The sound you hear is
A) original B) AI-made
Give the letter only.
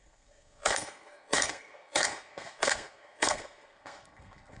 B